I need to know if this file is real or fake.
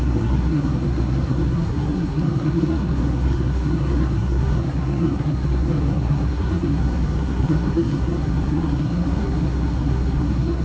fake